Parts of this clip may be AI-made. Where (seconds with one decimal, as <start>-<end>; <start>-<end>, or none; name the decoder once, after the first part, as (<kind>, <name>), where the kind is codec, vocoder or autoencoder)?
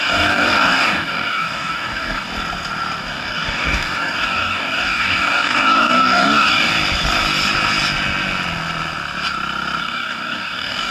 0.0-2.3 (codec, DAC); 3.0-6.7; 9.8-10.9